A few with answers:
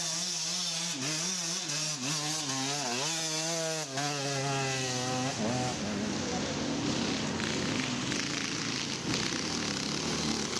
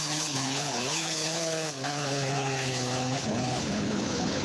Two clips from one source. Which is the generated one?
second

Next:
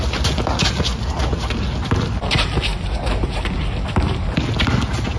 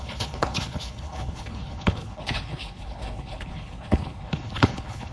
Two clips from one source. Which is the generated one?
second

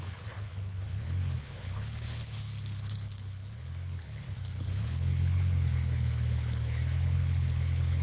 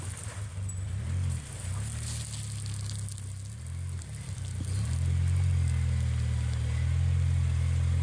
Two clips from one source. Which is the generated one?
first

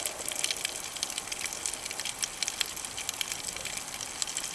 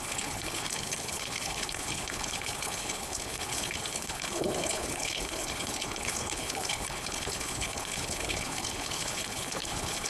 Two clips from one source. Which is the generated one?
second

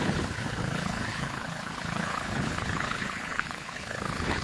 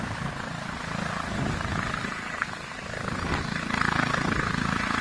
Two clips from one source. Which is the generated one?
first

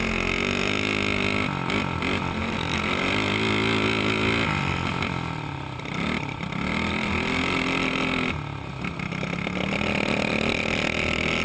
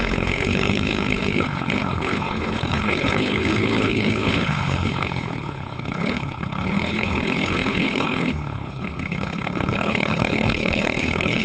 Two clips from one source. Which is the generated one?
second